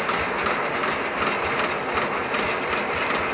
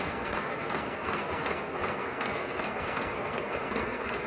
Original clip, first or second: first